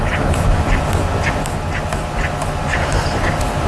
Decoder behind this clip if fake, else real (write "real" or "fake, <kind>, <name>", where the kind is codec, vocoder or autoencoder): real